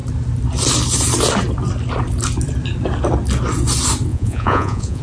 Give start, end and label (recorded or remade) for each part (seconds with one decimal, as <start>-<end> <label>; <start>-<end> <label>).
0.0-4.1 recorded; 4.1-5.0 remade

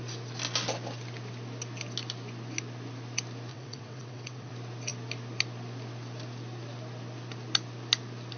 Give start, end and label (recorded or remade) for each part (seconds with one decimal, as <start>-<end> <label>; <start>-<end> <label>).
0.0-3.5 recorded; 3.5-4.5 remade; 4.5-8.4 recorded

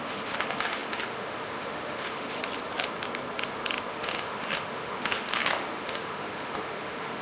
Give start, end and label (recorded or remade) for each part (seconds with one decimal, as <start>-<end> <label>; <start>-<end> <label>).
0.0-2.4 remade; 2.4-3.9 recorded; 3.9-7.2 remade

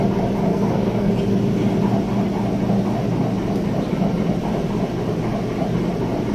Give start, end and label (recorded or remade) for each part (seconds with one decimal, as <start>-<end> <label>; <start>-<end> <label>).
0.0-0.5 recorded; 0.5-1.1 remade; 1.1-6.3 recorded

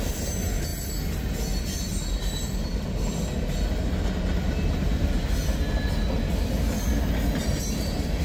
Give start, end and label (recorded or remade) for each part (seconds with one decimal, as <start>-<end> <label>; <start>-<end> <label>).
0.0-8.2 recorded

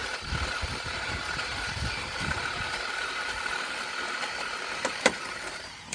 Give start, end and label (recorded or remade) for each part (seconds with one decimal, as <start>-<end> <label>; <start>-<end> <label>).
0.0-0.5 recorded; 0.5-5.9 remade

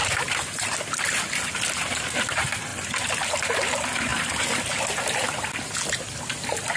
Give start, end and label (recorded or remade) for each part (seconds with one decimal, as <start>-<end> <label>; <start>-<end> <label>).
0.0-2.7 recorded; 2.7-3.4 remade; 3.4-4.1 recorded; 4.1-4.8 remade; 4.8-6.8 recorded

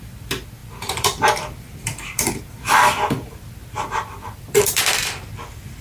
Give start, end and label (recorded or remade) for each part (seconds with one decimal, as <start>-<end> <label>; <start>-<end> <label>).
0.0-5.8 remade